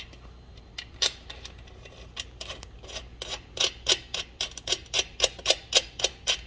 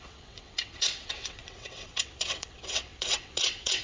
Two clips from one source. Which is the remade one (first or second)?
second